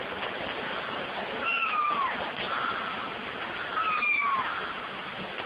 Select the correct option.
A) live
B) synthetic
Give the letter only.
A